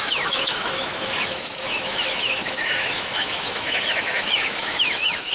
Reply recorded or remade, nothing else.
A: remade